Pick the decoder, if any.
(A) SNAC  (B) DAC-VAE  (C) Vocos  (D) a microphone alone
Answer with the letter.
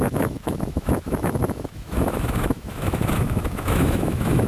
B